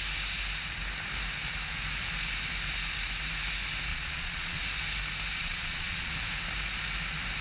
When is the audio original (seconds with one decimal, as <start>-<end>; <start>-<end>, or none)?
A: 0.0-3.9; 4.6-5.4; 6.1-7.4

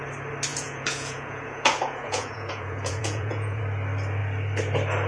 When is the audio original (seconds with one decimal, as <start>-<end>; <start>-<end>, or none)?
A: 0.0-0.5; 3.6-5.1

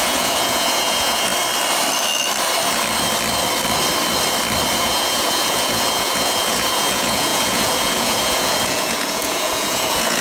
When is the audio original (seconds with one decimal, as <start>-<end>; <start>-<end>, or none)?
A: 1.3-4.8

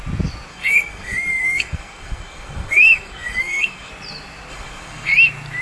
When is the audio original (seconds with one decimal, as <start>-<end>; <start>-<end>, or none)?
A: 0.0-0.5; 3.9-4.5; 5.1-5.6